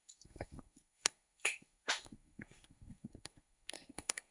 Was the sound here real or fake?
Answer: fake